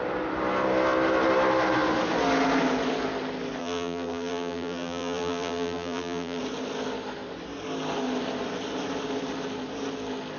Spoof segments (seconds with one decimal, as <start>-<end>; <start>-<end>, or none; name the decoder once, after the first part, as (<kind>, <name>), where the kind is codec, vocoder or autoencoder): 3.6-6.4 (vocoder, BigVGAN v2)